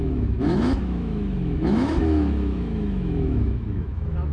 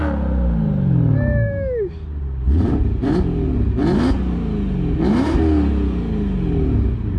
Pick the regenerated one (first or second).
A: first